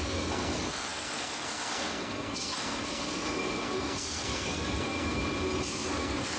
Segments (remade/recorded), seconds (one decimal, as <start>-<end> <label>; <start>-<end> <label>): 0.0-5.2 remade; 5.2-5.7 recorded; 5.7-6.4 remade